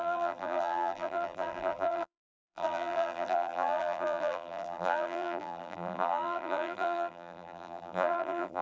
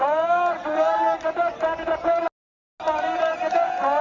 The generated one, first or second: first